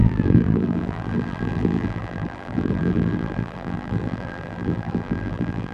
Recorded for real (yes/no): no